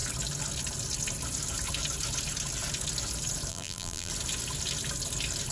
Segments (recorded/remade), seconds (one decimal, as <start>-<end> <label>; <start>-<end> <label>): 0.0-3.5 recorded; 3.5-4.1 remade; 4.1-5.5 recorded

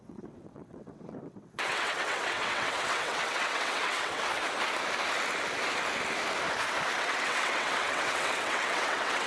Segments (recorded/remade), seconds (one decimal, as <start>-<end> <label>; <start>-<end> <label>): 0.0-4.3 remade; 4.3-7.0 recorded; 7.0-9.3 remade

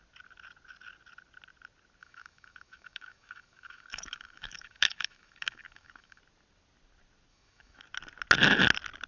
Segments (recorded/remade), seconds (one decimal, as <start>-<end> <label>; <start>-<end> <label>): 0.0-2.0 recorded; 2.0-6.2 remade; 6.2-7.3 recorded; 7.3-7.8 remade; 7.8-9.1 recorded